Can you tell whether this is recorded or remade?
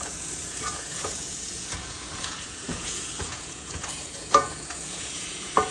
remade